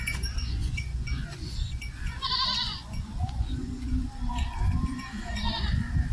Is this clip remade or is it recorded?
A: remade